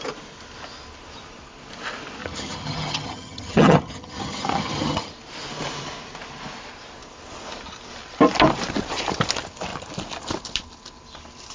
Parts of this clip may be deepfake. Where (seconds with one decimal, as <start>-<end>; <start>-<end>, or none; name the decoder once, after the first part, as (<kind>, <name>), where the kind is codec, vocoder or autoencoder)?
2.2-5.1 (vocoder, HiFi-GAN)